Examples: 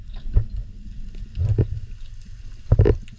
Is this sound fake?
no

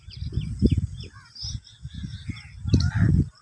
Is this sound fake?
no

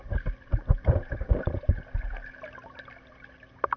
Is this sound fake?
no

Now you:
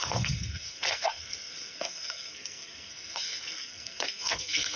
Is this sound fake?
yes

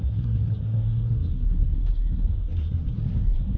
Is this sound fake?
yes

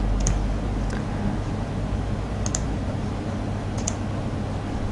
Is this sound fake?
no